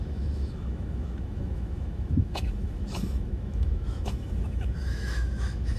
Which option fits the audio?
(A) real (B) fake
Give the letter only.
B